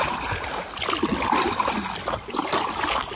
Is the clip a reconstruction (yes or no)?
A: no